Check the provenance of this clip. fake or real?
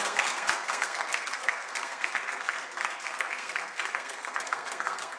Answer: fake